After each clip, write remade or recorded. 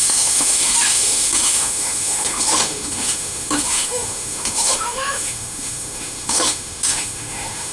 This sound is remade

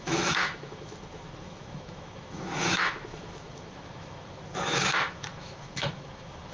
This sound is remade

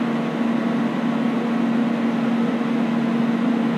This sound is recorded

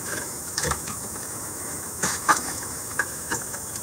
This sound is remade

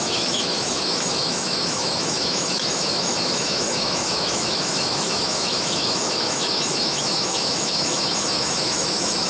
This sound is remade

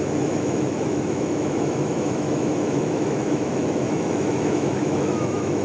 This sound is remade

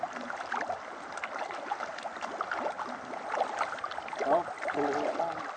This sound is recorded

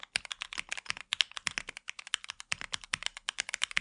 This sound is recorded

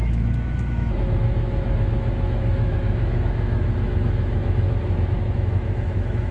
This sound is remade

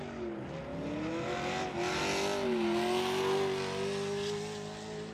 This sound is recorded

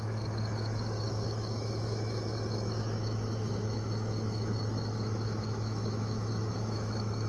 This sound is remade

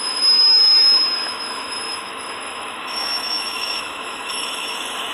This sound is remade